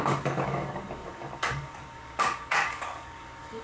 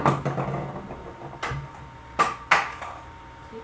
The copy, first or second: first